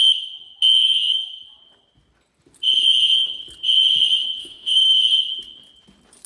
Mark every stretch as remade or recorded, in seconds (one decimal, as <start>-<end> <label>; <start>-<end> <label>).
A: 0.0-4.4 recorded; 4.4-5.0 remade; 5.0-6.3 recorded